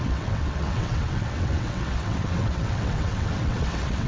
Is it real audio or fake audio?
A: fake